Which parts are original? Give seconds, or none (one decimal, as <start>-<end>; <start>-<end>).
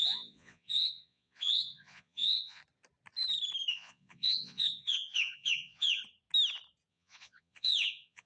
2.6-3.7; 6.0-6.9